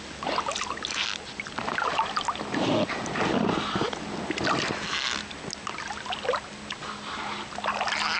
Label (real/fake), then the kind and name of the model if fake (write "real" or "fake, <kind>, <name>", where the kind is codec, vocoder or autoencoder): real